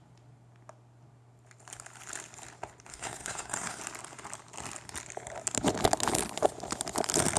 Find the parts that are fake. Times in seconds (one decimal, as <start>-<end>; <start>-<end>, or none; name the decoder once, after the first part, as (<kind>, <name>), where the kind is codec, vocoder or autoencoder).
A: 2.9-3.8 (codec, SNAC)